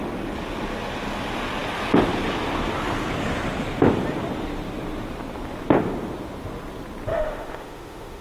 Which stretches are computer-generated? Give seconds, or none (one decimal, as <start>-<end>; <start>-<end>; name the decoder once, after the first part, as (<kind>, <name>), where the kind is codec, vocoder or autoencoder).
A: 7.1-8.2 (autoencoder, DAC-VAE)